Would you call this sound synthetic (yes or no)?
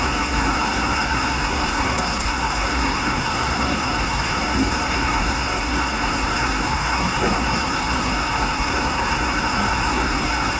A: yes